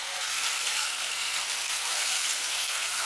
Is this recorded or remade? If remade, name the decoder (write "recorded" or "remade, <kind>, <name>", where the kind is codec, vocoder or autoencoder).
remade, codec, SNAC